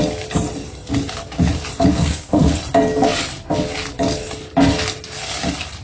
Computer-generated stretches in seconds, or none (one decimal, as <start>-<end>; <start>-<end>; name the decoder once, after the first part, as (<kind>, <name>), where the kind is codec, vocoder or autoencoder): 1.9-2.5 (codec, SNAC)